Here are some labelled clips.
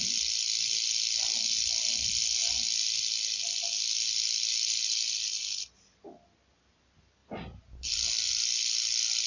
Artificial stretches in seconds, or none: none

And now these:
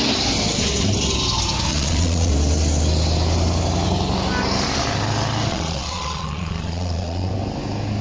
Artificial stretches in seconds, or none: 1.7-2.3 (vocoder, Vocos); 5.5-7.3

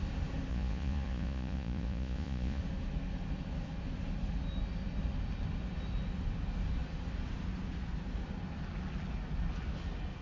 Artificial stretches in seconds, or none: 0.5-2.6 (vocoder, Vocos)

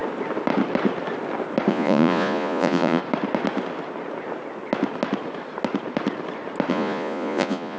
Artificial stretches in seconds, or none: 1.7-3.0 (vocoder, Vocos); 6.7-7.8

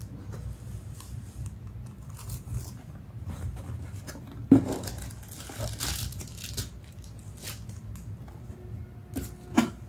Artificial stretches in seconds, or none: none

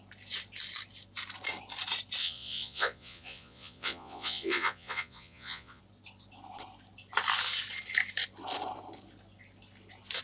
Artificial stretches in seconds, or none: 2.2-5.8 (vocoder, Vocos)

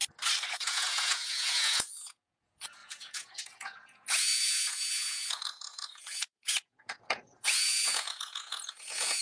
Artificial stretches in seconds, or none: 0.5-9.2 (vocoder, Vocos)

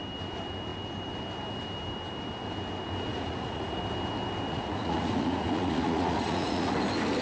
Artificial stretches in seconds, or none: 3.1-3.8 (vocoder, Vocos); 4.5-6.7